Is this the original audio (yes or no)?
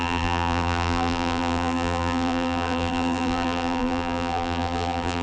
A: no